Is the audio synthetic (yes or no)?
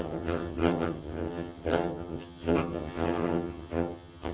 yes